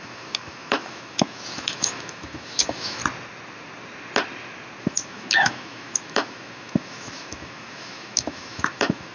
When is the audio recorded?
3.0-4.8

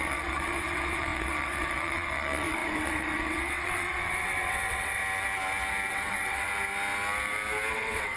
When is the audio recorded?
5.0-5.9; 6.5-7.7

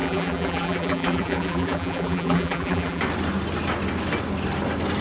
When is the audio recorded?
3.0-5.0

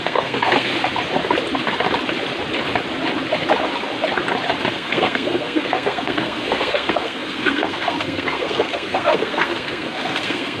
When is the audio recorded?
0.7-4.7